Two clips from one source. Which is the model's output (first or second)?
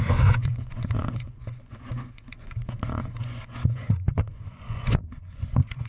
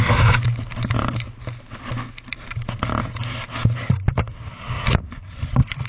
first